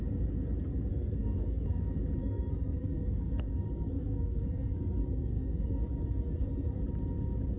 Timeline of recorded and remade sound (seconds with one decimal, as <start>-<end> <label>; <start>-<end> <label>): 0.0-0.9 recorded; 0.9-1.8 remade; 1.8-2.2 recorded; 2.2-6.8 remade; 6.8-7.6 recorded